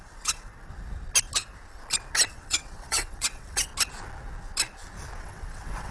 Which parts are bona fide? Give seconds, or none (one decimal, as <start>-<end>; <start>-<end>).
0.5-2.3; 3.7-5.2

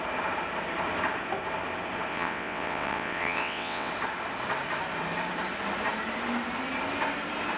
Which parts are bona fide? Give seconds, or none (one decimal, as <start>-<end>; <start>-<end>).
0.0-2.1; 3.9-7.6

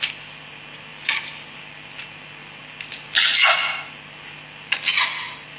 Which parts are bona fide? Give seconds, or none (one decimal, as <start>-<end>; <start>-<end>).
0.0-5.6

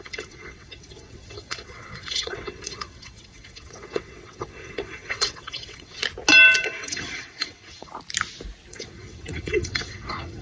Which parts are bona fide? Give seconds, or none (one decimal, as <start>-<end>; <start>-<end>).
6.0-6.6; 7.9-8.7

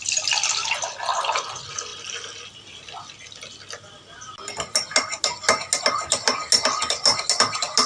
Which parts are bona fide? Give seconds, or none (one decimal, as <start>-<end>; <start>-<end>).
0.0-7.9

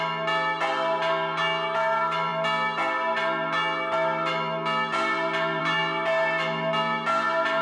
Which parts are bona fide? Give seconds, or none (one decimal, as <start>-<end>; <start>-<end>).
0.0-7.6

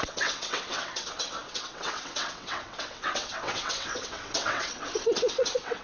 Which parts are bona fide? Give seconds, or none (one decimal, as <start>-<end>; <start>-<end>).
none